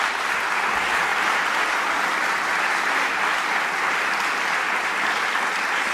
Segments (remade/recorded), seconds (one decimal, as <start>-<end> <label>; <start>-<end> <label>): 0.0-1.1 recorded; 1.1-2.5 remade; 2.5-5.9 recorded